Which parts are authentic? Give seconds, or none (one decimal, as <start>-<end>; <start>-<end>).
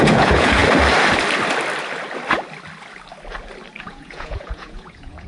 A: 0.6-3.8